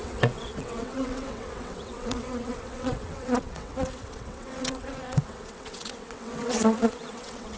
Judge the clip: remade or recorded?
remade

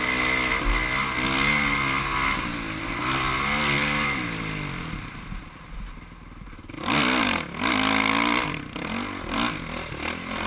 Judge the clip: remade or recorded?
recorded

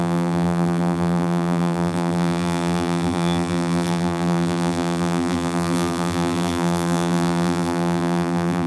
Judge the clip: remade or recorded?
remade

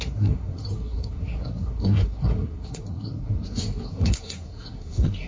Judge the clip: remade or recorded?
remade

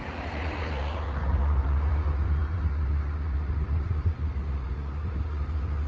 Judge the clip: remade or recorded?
remade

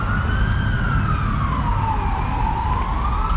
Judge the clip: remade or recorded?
recorded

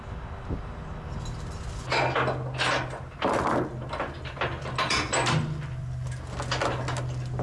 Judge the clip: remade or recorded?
recorded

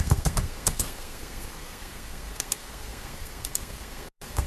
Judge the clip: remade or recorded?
remade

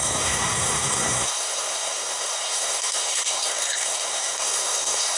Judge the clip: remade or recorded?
remade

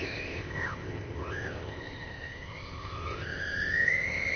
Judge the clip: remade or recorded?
remade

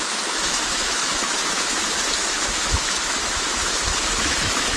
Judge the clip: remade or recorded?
remade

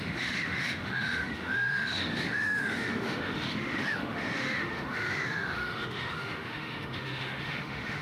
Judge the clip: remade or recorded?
remade